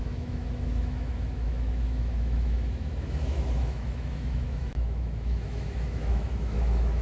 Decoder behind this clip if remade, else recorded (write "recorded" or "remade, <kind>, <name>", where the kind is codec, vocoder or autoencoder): remade, autoencoder, DAC-VAE